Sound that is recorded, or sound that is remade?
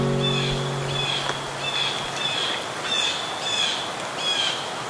recorded